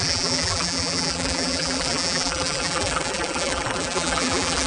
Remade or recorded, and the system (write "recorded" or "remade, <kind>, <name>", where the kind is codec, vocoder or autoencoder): remade, vocoder, BigVGAN v2